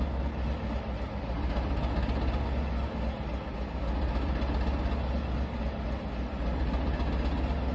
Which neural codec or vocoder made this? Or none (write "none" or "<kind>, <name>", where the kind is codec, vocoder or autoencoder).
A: none